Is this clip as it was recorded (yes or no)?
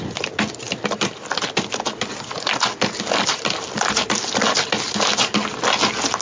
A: yes